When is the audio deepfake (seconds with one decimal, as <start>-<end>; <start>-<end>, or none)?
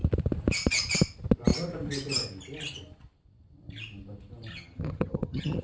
4.5-5.6